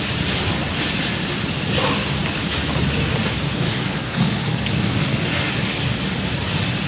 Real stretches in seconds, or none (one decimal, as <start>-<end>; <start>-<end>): 0.0-3.8; 5.5-6.9